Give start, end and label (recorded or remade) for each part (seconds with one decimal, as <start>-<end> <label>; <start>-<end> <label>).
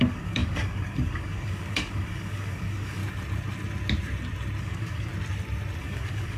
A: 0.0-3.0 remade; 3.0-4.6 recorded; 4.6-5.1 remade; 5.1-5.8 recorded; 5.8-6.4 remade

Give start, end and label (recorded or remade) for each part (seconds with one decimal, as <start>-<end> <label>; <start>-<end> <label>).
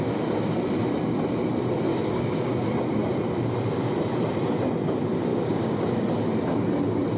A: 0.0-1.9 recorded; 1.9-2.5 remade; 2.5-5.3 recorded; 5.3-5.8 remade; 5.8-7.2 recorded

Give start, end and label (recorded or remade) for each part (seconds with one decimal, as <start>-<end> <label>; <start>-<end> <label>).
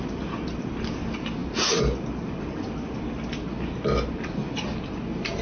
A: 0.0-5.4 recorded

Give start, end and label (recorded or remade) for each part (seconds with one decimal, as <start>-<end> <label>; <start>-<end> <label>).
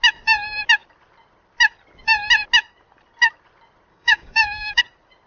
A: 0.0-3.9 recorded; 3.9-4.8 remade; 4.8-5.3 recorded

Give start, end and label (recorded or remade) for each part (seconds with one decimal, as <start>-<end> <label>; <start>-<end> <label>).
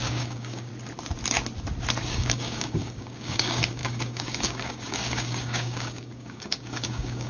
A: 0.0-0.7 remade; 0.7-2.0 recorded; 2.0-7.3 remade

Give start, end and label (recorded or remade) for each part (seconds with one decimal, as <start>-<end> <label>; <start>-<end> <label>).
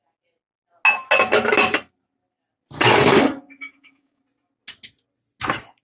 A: 0.0-3.1 recorded; 3.1-4.2 remade; 4.2-5.8 recorded